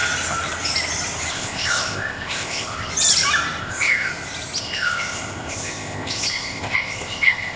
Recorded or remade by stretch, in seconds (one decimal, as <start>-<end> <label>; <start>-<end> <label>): 0.0-1.3 recorded; 1.3-2.9 remade; 2.9-3.6 recorded; 3.6-4.1 remade; 4.1-4.6 recorded; 4.6-7.6 remade